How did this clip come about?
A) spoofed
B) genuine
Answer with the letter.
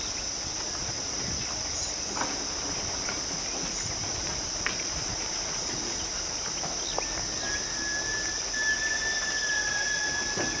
B